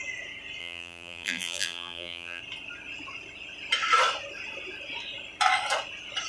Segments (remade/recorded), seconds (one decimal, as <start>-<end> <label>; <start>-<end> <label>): 0.0-0.6 recorded; 0.6-2.4 remade; 2.4-6.3 recorded